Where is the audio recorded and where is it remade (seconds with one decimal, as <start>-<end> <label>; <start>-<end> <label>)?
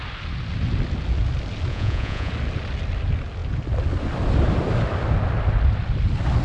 0.0-1.7 recorded; 1.7-2.3 remade; 2.3-6.4 recorded